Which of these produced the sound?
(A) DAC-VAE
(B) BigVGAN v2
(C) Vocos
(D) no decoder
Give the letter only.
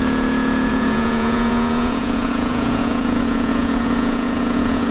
C